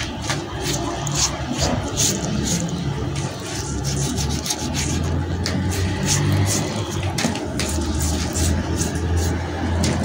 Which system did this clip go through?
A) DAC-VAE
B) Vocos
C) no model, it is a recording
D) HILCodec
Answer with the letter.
C